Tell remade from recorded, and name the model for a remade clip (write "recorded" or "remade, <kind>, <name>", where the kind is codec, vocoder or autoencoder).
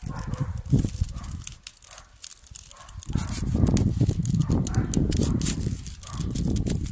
recorded